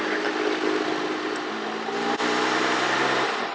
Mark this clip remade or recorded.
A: recorded